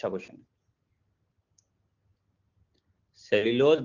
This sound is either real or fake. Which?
real